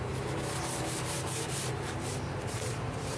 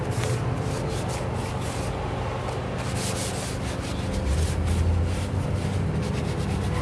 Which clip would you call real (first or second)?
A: second